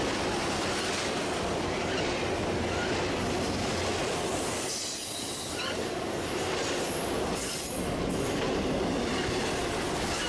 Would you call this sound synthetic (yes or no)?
no